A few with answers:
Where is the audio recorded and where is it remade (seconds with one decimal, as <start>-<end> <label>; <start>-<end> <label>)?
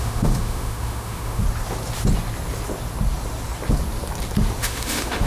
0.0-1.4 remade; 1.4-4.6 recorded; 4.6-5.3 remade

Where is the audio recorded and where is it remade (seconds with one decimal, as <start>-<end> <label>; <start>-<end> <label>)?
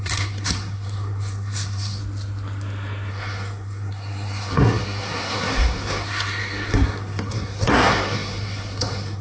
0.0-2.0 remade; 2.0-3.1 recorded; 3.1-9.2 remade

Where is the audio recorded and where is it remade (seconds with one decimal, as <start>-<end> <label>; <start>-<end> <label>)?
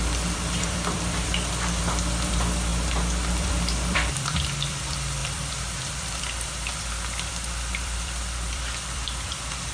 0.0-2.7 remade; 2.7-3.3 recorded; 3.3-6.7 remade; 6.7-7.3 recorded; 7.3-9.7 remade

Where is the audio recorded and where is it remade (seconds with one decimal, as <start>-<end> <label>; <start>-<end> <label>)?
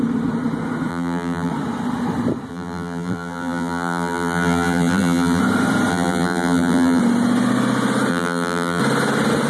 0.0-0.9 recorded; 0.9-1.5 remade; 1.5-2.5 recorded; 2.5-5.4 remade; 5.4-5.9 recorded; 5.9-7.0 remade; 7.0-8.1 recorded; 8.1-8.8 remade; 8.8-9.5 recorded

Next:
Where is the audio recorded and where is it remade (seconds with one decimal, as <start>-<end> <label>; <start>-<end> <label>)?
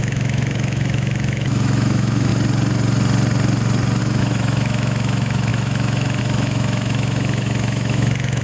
0.0-2.3 remade; 2.3-4.0 recorded; 4.0-8.4 remade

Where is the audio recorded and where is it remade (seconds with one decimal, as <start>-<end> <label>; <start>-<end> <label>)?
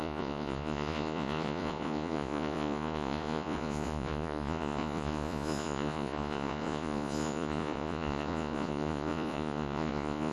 0.0-10.3 remade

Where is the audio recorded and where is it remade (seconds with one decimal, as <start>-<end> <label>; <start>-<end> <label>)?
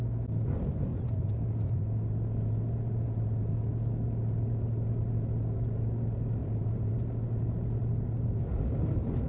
0.0-0.9 recorded; 0.9-1.5 remade; 1.5-6.4 recorded; 6.4-6.9 remade; 6.9-9.3 recorded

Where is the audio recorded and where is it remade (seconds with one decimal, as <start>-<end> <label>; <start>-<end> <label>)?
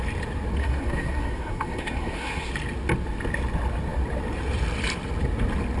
0.0-0.6 recorded; 0.6-2.5 remade; 2.5-5.8 recorded